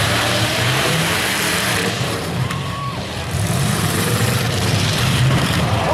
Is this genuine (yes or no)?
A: no